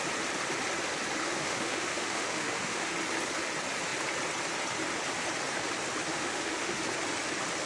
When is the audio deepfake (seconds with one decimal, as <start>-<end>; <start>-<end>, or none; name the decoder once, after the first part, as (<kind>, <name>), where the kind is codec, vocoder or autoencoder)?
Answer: 1.2-2.9 (autoencoder, DAC-VAE); 6.1-6.8